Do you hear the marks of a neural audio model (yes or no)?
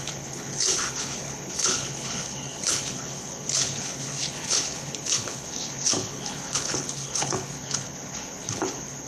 yes